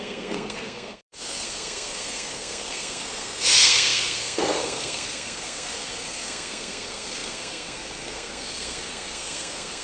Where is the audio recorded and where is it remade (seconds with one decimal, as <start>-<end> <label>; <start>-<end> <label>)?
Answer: 0.0-9.8 remade